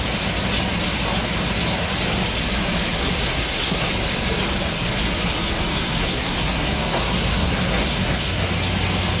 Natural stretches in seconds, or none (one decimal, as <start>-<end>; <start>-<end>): 0.0-3.0; 3.9-5.7; 8.5-9.2